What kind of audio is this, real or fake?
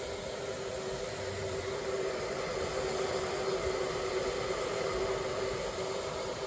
real